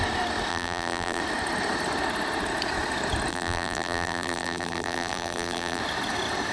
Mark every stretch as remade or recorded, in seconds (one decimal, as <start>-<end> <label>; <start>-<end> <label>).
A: 0.0-0.5 recorded; 0.5-1.2 remade; 1.2-3.3 recorded; 3.3-5.8 remade; 5.8-6.5 recorded